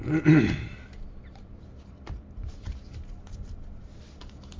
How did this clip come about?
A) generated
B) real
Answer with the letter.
A